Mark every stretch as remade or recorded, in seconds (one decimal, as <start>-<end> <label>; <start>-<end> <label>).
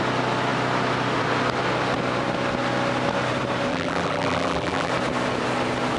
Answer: 0.0-3.7 recorded; 3.7-4.9 remade; 4.9-6.0 recorded